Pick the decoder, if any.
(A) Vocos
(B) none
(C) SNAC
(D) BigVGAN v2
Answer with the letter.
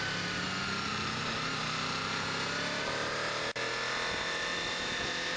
B